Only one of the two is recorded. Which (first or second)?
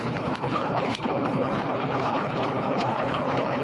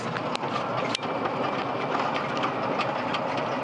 second